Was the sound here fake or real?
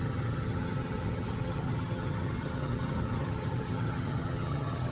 fake